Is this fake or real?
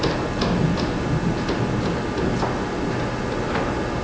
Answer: real